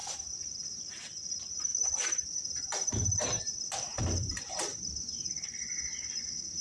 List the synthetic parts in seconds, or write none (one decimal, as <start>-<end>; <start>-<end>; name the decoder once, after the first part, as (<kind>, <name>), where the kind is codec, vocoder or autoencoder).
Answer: 0.0-0.8 (vocoder, BigVGAN v2); 1.7-4.0; 4.7-5.3

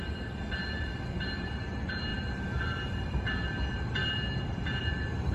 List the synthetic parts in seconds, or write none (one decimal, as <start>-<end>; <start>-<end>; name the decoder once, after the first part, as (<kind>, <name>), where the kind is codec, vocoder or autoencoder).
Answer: none

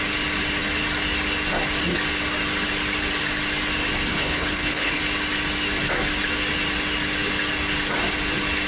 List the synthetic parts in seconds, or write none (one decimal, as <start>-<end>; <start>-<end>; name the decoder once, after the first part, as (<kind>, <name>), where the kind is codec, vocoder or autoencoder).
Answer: 4.1-5.0 (codec, HILCodec)

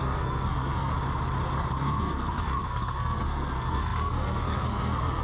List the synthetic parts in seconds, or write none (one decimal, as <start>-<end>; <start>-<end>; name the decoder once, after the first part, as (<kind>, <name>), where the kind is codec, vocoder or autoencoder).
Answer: 0.0-0.9 (codec, SNAC); 1.8-5.2

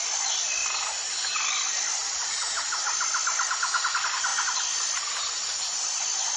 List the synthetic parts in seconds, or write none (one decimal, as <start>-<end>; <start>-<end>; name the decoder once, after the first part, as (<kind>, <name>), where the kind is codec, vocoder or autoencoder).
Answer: none